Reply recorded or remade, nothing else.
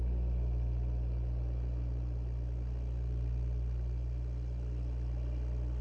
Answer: recorded